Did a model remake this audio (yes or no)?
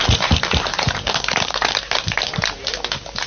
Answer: yes